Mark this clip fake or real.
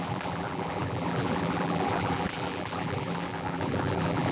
fake